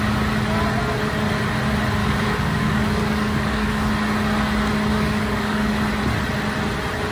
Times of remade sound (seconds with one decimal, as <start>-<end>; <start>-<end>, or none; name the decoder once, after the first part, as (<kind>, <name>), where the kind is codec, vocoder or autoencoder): 2.0-3.9 (codec, DAC); 4.9-5.7